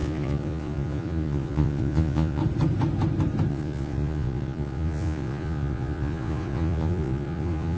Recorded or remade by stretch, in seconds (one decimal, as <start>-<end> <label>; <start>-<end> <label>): 0.0-2.4 remade; 2.4-3.5 recorded; 3.5-7.8 remade